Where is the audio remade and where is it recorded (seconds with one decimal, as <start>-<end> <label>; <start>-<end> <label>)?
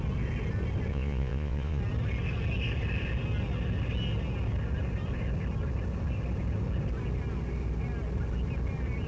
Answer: 0.0-0.9 recorded; 0.9-1.8 remade; 1.8-9.1 recorded